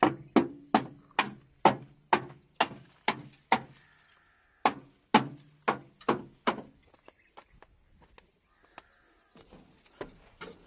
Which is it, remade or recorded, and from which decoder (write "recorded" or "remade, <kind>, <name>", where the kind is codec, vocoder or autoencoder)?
recorded